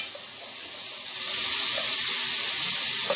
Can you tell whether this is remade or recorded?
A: recorded